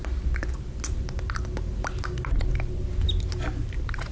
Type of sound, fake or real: real